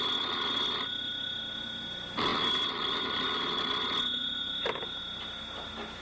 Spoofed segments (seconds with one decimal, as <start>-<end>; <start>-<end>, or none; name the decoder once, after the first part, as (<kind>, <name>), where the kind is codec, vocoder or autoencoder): 4.2-5.0 (vocoder, BigVGAN v2)